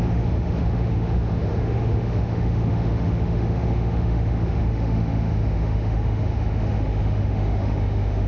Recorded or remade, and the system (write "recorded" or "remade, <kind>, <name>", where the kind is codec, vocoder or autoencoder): remade, autoencoder, DAC-VAE